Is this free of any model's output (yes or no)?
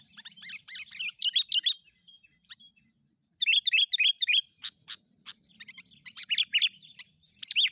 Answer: yes